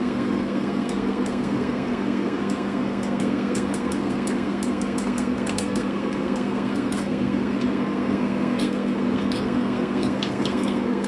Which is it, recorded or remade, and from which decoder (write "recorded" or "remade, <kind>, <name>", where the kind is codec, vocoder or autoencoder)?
remade, codec, SNAC